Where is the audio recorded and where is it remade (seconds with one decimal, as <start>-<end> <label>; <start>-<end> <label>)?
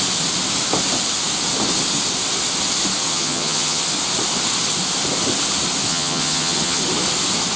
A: 0.0-3.1 recorded; 3.1-3.8 remade; 3.8-5.9 recorded; 5.9-6.8 remade; 6.8-7.6 recorded